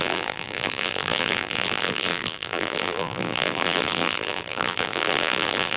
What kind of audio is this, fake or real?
fake